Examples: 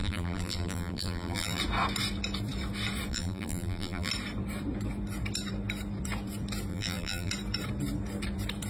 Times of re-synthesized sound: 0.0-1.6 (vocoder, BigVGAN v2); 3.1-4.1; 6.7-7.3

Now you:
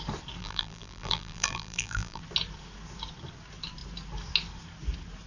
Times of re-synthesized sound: 0.4-2.2 (vocoder, BigVGAN v2)

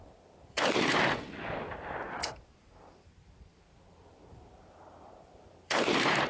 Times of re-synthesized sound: 0.0-0.9 (vocoder, BigVGAN v2); 2.2-6.3

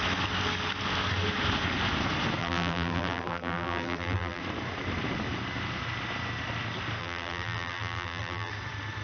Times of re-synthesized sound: 2.4-4.4 (vocoder, BigVGAN v2); 7.0-8.5